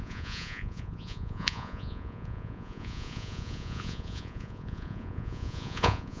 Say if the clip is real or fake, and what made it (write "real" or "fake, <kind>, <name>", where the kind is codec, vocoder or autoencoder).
fake, vocoder, Vocos